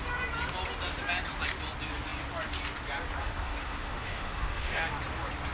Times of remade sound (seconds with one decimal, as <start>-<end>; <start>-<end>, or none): 3.2-4.8

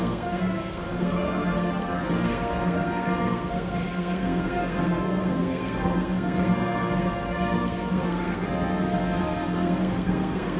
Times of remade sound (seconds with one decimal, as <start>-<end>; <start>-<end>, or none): 0.0-10.6

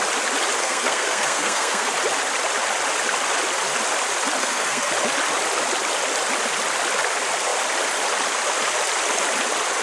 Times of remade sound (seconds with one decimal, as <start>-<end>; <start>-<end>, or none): 0.6-1.9; 4.4-4.9

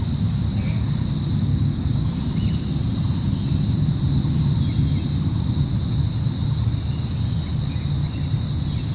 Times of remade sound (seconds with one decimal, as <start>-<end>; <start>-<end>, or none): 1.5-2.1

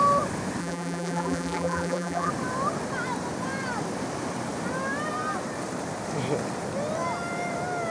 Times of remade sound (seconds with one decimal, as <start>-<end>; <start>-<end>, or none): 0.6-2.3

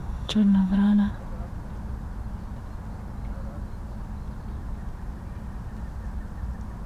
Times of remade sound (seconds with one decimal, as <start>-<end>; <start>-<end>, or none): 0.0-1.1